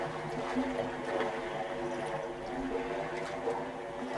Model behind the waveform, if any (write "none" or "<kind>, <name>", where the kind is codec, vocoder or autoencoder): none